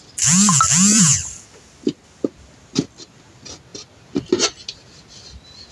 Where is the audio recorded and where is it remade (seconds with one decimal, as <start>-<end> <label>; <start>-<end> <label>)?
0.0-0.9 recorded; 0.9-1.4 remade; 1.4-5.7 recorded